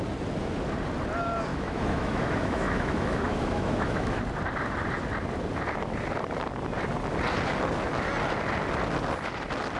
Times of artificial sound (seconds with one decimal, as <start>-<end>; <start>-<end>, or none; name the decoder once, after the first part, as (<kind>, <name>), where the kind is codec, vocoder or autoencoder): 1.5-4.2 (autoencoder, DAC-VAE)